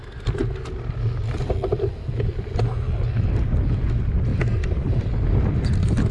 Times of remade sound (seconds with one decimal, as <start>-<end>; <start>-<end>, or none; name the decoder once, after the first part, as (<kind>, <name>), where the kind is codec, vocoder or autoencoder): 4.3-5.1 (vocoder, BigVGAN v2)